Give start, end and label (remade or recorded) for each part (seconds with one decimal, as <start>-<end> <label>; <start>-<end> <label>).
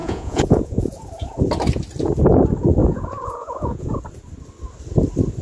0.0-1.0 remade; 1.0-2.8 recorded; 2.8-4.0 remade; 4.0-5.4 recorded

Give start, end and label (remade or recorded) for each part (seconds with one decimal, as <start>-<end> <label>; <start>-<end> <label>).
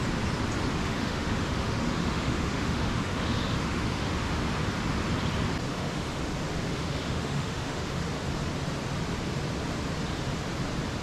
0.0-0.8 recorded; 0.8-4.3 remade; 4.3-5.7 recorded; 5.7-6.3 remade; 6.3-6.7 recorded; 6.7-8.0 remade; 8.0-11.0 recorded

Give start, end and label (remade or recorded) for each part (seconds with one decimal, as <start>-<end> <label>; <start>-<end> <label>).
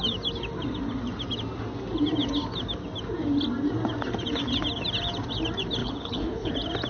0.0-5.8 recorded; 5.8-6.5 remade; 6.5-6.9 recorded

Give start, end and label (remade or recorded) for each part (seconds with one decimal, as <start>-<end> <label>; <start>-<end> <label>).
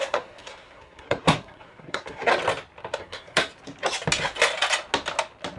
0.0-2.3 remade; 2.3-3.0 recorded; 3.0-3.4 remade; 3.4-5.6 recorded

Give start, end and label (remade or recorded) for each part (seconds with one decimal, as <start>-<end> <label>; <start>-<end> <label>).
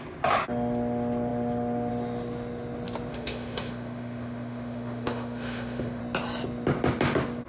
0.0-3.1 recorded; 3.1-6.0 remade; 6.0-7.5 recorded